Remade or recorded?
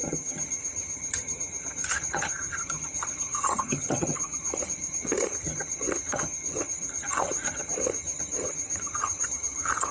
remade